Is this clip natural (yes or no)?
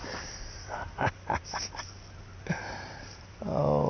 yes